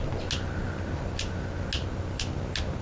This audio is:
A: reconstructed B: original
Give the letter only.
B